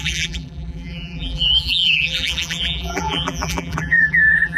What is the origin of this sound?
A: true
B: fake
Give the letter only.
B